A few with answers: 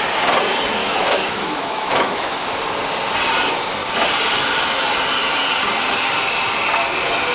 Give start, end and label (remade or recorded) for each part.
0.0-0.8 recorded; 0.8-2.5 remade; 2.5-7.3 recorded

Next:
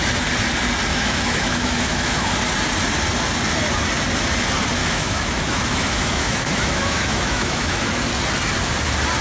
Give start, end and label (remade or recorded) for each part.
0.0-0.9 recorded; 0.9-2.3 remade; 2.3-4.8 recorded; 4.8-7.9 remade; 7.9-9.2 recorded

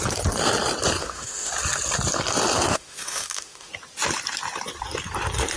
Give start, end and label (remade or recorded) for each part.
0.0-1.0 recorded; 1.0-1.5 remade; 1.5-2.7 recorded; 2.7-3.7 remade; 3.7-5.6 recorded

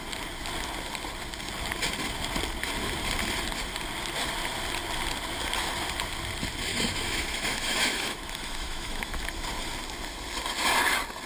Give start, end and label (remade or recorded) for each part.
0.0-6.7 recorded; 6.7-9.2 remade; 9.2-11.3 recorded

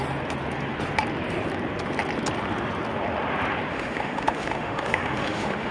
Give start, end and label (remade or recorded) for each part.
0.0-3.7 recorded; 3.7-5.7 remade

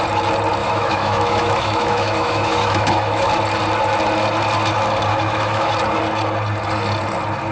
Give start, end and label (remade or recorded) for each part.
0.0-0.6 recorded; 0.6-3.3 remade; 3.3-5.1 recorded; 5.1-5.7 remade; 5.7-7.5 recorded